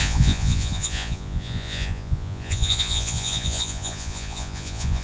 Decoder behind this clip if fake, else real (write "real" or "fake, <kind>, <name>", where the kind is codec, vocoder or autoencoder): fake, vocoder, Vocos